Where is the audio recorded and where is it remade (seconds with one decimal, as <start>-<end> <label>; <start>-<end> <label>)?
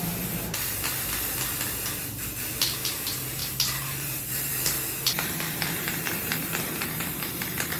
0.0-3.4 recorded; 3.4-7.3 remade; 7.3-7.8 recorded